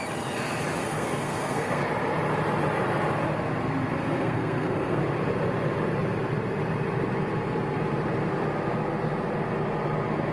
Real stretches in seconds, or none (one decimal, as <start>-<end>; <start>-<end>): 0.0-0.8; 1.8-4.0; 5.0-10.3